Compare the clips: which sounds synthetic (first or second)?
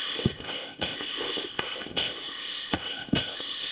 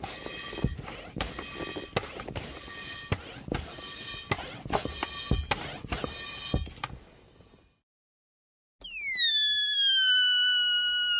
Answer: first